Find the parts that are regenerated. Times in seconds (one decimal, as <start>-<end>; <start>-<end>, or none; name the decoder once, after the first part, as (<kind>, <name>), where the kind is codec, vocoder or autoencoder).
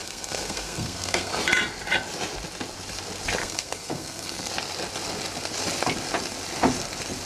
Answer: 0.0-1.3 (codec, SNAC); 3.4-4.5